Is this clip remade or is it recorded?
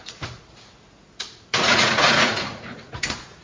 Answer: remade